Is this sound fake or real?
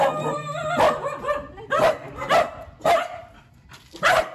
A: real